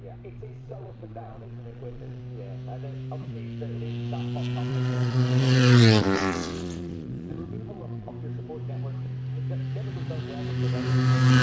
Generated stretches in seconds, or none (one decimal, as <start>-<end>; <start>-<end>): 0.4-2.2; 4.7-8.1